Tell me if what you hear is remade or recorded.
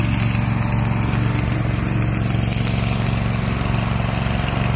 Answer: recorded